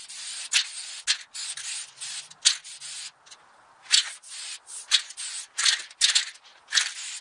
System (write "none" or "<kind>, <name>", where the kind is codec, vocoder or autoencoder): none